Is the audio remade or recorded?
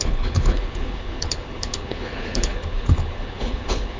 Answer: remade